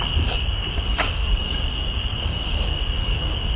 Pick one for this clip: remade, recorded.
remade